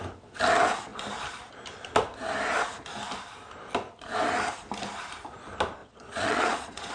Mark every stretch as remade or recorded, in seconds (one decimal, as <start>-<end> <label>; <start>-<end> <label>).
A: 0.0-5.8 recorded; 5.8-6.9 remade